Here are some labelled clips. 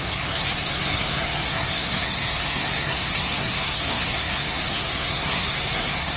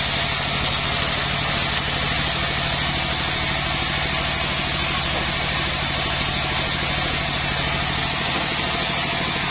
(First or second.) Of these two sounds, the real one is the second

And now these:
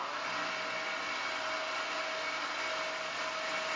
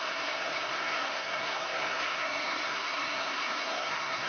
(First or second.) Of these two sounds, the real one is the first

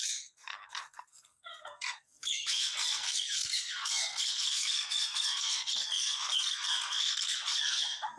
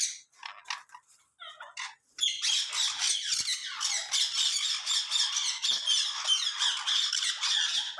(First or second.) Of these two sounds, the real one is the second